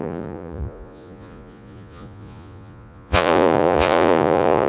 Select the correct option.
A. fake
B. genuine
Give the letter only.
A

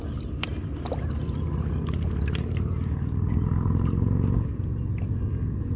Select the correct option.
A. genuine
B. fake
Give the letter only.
A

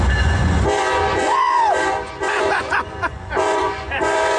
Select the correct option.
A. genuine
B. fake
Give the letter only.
B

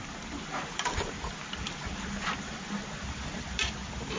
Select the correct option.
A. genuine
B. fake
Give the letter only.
A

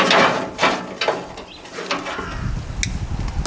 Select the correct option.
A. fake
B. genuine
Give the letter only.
B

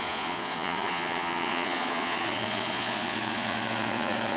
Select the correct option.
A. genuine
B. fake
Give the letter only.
B